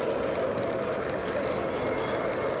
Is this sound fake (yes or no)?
no